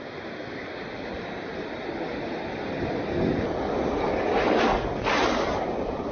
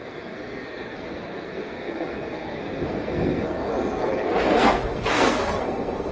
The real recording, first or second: first